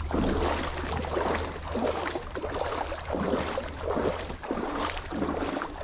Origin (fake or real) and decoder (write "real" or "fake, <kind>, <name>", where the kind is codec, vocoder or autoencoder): real